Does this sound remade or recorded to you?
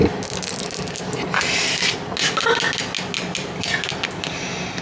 recorded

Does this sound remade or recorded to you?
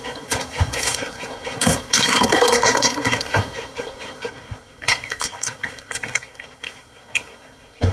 remade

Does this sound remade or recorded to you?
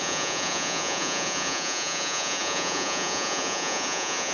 remade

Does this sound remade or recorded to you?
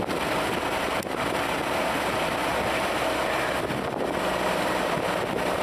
remade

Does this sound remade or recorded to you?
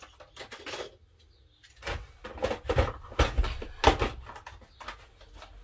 recorded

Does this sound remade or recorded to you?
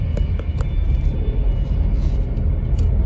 recorded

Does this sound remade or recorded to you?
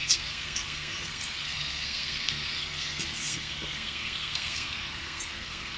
remade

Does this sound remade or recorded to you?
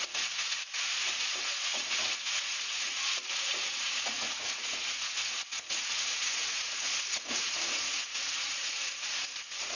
remade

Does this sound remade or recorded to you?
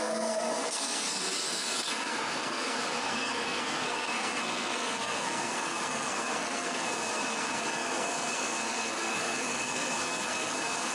remade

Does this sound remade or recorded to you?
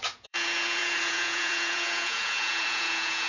remade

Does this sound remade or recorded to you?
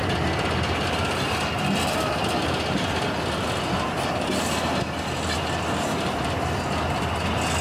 recorded